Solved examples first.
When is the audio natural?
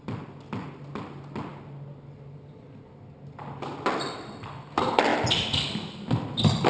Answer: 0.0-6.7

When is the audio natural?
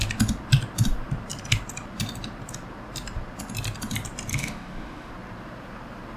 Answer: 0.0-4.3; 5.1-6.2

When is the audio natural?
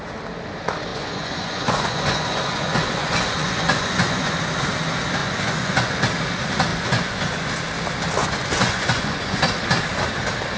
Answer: 0.0-0.9; 4.3-5.2; 6.0-6.7; 7.5-8.2; 9.4-10.6